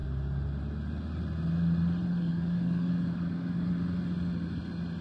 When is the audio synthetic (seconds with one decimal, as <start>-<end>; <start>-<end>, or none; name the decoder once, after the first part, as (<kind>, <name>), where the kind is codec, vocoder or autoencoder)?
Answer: 2.3-3.7 (codec, DAC)